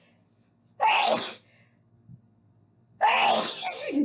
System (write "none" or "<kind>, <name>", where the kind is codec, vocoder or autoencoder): none